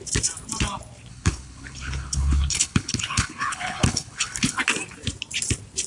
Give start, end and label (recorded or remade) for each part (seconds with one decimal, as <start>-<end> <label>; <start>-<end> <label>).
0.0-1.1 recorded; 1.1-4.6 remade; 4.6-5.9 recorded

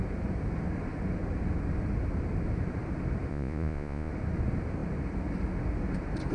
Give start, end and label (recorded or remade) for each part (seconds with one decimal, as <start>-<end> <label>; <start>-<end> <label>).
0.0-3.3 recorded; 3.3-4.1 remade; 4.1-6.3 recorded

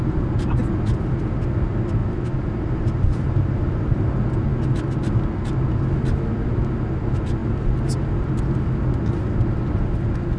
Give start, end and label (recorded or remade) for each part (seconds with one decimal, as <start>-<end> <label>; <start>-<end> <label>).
0.0-2.0 recorded; 2.0-4.1 remade; 4.1-10.4 recorded

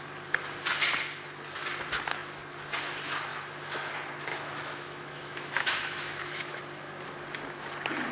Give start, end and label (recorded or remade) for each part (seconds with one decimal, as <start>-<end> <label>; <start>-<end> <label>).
0.0-3.3 recorded; 3.3-3.9 remade; 3.9-4.3 recorded; 4.3-6.6 remade; 6.6-8.1 recorded

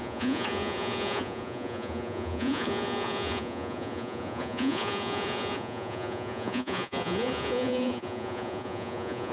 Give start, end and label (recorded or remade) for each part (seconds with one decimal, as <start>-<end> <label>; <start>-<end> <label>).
0.0-9.3 remade

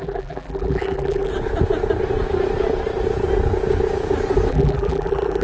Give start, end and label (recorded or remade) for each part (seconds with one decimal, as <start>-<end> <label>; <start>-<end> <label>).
0.0-1.3 remade; 1.3-4.5 recorded; 4.5-5.4 remade

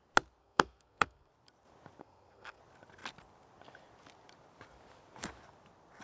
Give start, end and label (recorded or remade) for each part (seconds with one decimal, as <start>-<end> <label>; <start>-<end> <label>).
0.0-0.4 recorded; 0.4-1.3 remade; 1.3-2.0 recorded; 2.0-2.6 remade; 2.6-6.0 recorded